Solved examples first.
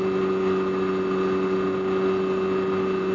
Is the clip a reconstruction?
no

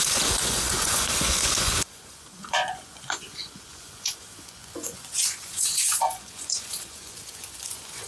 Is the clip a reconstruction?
yes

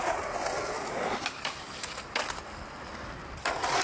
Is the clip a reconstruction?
no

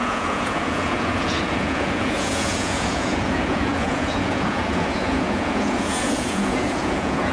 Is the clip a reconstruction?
yes